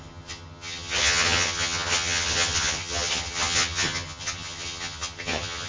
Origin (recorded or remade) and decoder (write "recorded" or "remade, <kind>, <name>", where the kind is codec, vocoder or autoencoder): remade, vocoder, HiFi-GAN